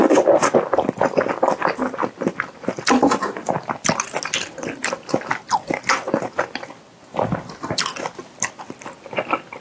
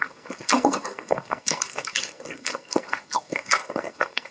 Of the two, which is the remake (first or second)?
second